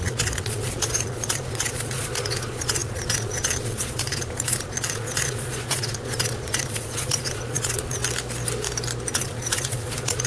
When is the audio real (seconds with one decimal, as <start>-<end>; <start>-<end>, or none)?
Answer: 8.0-9.1